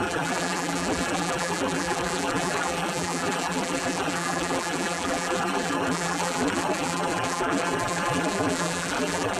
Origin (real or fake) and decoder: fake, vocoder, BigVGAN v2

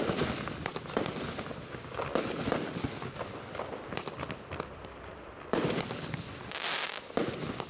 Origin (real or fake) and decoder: real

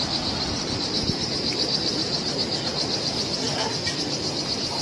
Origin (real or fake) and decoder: fake, vocoder, BigVGAN v2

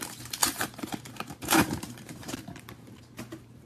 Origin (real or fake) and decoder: fake, vocoder, BigVGAN v2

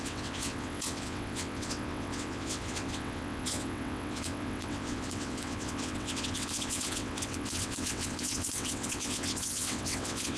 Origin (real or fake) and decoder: fake, vocoder, WaveNeXt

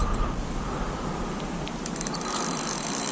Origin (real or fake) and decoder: real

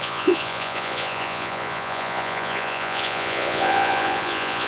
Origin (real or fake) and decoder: fake, vocoder, Vocos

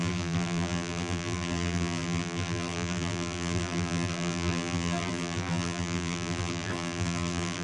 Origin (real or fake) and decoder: fake, vocoder, BigVGAN v2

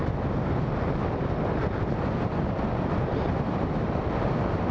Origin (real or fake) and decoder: real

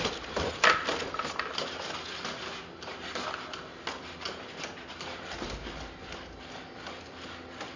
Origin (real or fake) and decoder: real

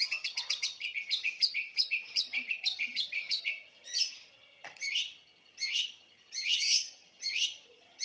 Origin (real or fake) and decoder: fake, vocoder, HiFi-GAN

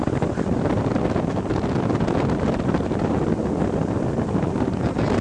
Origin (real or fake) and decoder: real